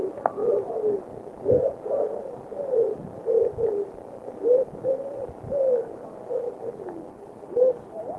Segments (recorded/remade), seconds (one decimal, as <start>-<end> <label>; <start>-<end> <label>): 0.0-7.1 recorded; 7.1-8.2 remade